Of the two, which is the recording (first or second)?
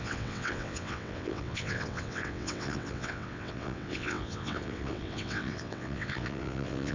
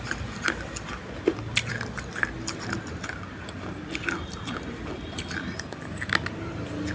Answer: second